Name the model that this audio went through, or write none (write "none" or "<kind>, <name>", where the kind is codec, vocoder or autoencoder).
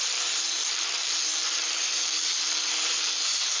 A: vocoder, BigVGAN v2